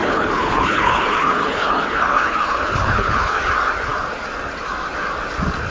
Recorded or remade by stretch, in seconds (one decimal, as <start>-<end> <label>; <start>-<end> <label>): 0.0-3.4 remade; 3.4-5.7 recorded